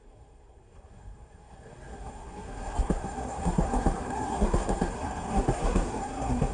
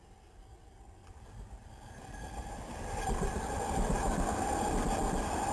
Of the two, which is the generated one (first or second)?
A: first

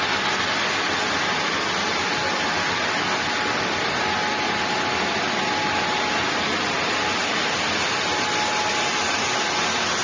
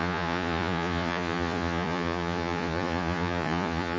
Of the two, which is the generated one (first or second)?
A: second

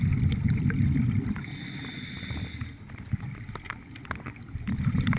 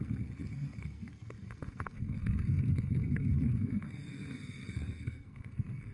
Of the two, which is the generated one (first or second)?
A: second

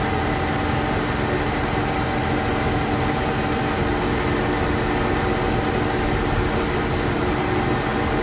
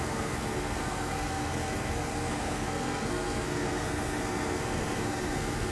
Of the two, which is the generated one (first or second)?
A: second